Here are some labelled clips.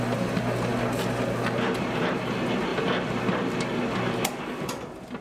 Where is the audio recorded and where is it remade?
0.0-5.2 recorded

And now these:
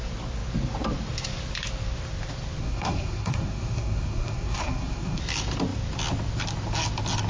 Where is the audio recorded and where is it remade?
0.0-2.6 recorded; 2.6-5.2 remade; 5.2-7.3 recorded

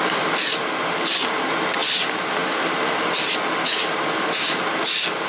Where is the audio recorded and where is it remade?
0.0-5.3 recorded

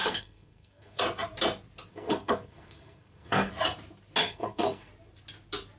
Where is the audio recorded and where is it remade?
0.0-1.0 remade; 1.0-1.9 recorded; 1.9-3.5 remade; 3.5-4.2 recorded; 4.2-4.9 remade; 4.9-5.8 recorded

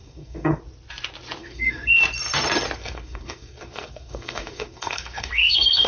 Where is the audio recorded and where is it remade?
0.0-0.6 remade; 0.6-1.4 recorded; 1.4-2.0 remade; 2.0-2.8 recorded; 2.8-5.9 remade

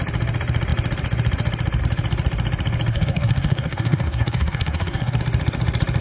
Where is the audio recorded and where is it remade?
0.0-2.9 recorded; 2.9-5.2 remade; 5.2-6.0 recorded

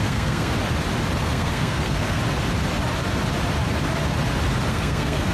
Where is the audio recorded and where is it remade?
0.0-0.5 remade; 0.5-1.2 recorded; 1.2-2.2 remade; 2.2-4.7 recorded; 4.7-5.3 remade

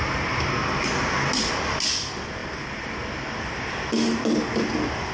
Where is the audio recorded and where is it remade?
0.0-5.1 recorded